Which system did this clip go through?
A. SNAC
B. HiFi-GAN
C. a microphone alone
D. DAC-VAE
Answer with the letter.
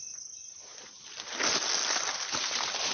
C